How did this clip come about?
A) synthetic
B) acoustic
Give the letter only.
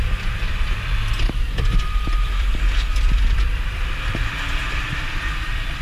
A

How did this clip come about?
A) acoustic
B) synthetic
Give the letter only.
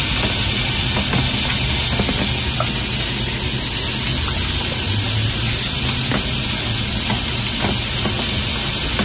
A